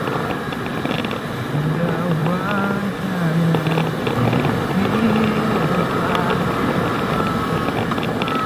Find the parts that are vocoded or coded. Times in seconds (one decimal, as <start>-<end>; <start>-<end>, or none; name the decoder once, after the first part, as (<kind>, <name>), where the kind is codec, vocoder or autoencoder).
none